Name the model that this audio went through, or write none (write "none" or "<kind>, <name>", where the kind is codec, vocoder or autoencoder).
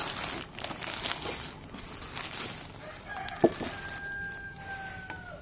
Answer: none